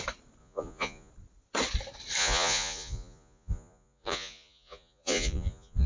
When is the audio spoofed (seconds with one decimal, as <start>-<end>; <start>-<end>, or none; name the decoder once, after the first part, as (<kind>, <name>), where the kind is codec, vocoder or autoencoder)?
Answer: 0.4-1.1 (vocoder, Vocos); 2.2-5.9